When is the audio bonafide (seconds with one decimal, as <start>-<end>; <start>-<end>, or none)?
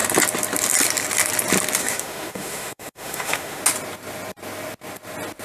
0.0-1.8; 3.6-5.4